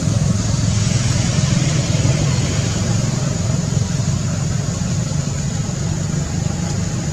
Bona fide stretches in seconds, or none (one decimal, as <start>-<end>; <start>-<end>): 0.0-1.1; 5.2-7.1